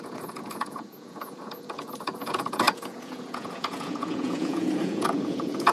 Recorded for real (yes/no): no